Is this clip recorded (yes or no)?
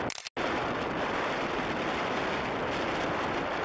yes